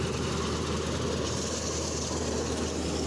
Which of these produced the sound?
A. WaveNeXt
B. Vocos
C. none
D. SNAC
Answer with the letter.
C